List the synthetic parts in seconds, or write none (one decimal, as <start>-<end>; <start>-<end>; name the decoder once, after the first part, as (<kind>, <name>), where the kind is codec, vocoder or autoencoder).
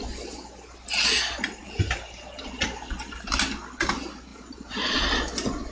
1.6-2.4 (vocoder, BigVGAN v2); 4.3-5.0